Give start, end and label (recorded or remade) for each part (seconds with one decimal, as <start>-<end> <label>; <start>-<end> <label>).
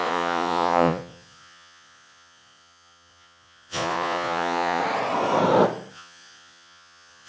0.0-4.8 remade; 4.8-5.9 recorded; 5.9-7.3 remade